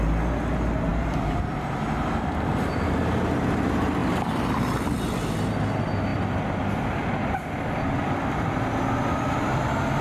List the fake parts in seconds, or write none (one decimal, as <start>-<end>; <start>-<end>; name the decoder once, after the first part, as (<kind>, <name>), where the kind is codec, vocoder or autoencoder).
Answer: 0.9-2.5 (vocoder, BigVGAN v2); 4.0-5.3